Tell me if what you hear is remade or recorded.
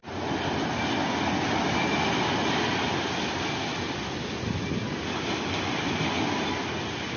recorded